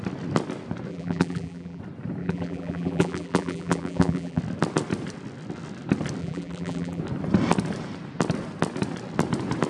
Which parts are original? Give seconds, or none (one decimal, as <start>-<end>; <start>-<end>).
0.0-0.9; 1.8-2.2; 4.4-6.2; 7.0-9.7